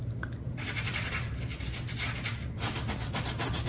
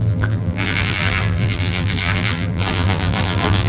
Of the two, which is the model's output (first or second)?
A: second